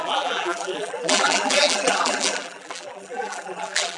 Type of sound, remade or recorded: remade